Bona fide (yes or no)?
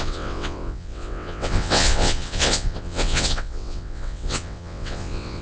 no